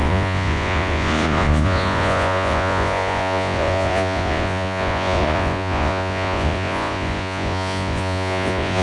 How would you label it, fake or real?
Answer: fake